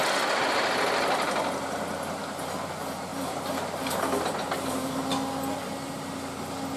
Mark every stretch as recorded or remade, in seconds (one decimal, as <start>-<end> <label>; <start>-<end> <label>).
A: 0.0-3.1 recorded; 3.1-5.0 remade; 5.0-6.8 recorded